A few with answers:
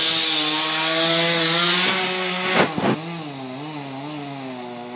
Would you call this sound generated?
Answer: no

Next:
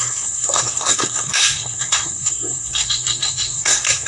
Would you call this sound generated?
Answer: yes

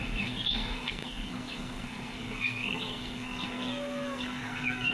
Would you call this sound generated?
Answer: yes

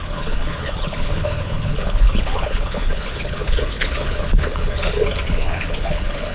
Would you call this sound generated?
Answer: yes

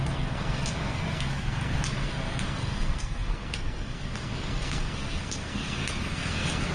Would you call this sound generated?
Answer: yes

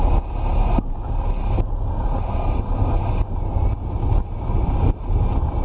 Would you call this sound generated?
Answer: no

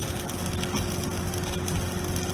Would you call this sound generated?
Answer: no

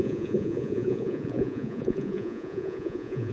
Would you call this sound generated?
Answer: yes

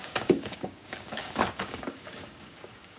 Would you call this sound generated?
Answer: yes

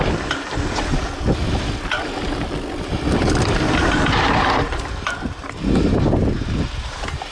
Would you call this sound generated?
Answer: no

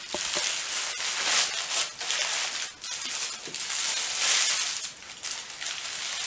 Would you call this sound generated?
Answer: no